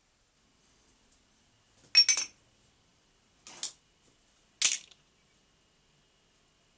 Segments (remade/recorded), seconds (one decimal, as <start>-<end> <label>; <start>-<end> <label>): 0.0-6.8 recorded